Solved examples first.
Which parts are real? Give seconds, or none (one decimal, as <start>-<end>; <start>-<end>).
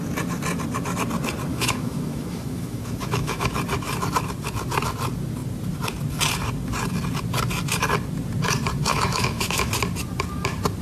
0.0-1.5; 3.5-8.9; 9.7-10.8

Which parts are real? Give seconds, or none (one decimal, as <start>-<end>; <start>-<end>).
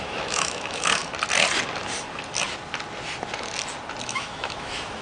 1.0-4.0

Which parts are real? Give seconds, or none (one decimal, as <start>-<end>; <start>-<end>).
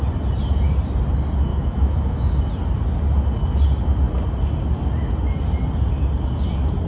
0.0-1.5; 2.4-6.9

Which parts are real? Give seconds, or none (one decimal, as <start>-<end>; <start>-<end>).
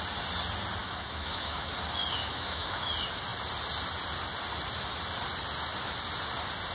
0.0-0.8; 1.7-2.2; 2.9-6.7